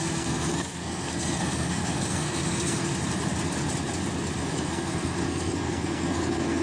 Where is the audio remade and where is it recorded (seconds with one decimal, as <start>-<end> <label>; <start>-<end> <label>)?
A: 0.0-2.9 remade; 2.9-4.4 recorded; 4.4-6.6 remade